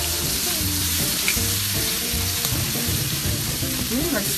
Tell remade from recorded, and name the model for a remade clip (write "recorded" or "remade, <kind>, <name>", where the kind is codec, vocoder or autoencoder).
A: remade, vocoder, BigVGAN v2